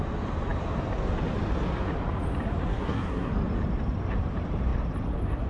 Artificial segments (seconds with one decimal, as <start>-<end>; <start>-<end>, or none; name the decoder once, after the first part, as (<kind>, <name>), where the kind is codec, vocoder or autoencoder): 2.7-3.3 (codec, SNAC)